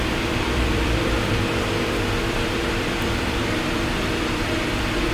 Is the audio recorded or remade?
remade